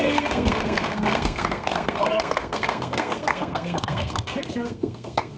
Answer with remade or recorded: remade